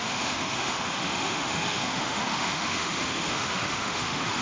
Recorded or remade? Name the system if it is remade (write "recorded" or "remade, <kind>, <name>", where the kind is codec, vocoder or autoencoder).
remade, autoencoder, DAC-VAE